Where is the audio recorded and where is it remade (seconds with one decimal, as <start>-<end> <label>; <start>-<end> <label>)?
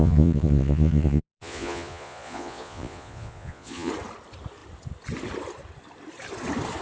0.0-3.9 remade; 3.9-6.8 recorded